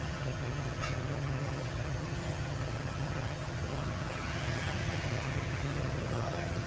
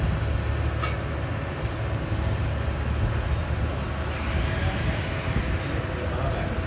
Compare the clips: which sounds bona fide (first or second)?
second